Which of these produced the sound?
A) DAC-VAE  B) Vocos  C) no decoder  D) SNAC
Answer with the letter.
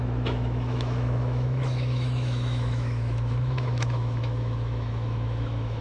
A